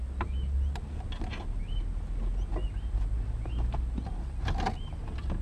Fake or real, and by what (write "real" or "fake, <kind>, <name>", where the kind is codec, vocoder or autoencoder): real